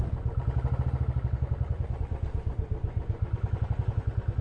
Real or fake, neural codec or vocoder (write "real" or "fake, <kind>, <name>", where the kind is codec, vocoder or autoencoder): real